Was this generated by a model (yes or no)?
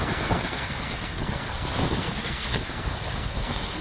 yes